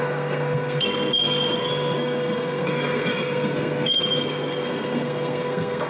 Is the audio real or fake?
fake